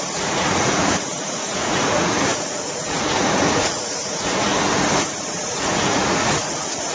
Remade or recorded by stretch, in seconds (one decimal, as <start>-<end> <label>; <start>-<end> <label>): 0.0-4.5 remade; 4.5-5.0 recorded; 5.0-6.9 remade